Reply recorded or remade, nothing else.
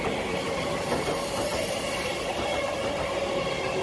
recorded